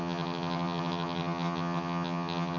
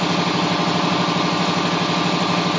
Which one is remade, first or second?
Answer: first